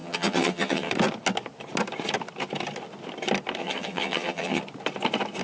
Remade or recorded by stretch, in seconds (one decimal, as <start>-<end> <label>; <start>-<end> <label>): 0.0-0.9 remade; 0.9-3.6 recorded; 3.6-4.6 remade; 4.6-5.4 recorded